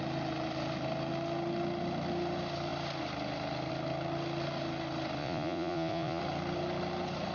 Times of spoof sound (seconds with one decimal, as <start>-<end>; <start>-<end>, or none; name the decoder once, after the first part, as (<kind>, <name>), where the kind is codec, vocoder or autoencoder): 5.2-6.2 (vocoder, Vocos)

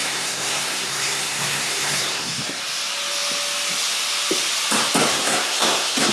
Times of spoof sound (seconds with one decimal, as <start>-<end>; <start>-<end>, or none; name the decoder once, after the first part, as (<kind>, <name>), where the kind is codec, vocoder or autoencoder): 0.0-2.6 (codec, SNAC); 5.1-6.1

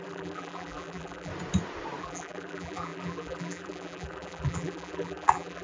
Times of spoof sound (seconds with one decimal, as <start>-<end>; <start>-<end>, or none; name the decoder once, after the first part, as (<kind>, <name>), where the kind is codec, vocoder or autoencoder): 0.0-1.3 (vocoder, BigVGAN v2); 2.0-5.6

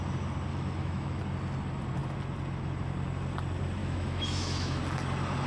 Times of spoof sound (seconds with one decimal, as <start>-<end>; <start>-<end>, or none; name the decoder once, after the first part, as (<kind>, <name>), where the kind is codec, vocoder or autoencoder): 0.5-1.2 (autoencoder, DAC-VAE); 3.8-4.8

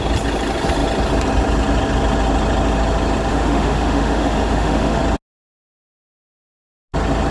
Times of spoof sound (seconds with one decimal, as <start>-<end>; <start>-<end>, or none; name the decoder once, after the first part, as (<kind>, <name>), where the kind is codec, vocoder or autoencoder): 3.3-5.0 (autoencoder, DAC-VAE)

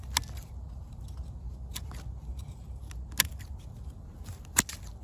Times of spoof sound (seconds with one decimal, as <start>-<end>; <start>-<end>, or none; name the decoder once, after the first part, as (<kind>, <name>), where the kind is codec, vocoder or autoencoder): 2.3-2.8 (vocoder, BigVGAN v2)

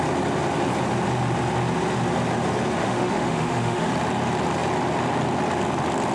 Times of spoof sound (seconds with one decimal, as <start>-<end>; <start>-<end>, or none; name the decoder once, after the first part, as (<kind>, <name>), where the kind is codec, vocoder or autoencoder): 2.8-3.9 (autoencoder, DAC-VAE)

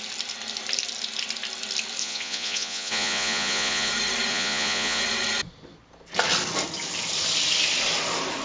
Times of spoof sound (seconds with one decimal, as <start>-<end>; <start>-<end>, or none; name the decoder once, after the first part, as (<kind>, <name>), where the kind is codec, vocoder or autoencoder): 2.0-3.9 (vocoder, Vocos); 4.3-5.0